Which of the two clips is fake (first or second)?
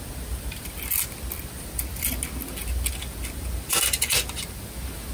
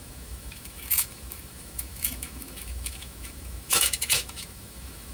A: second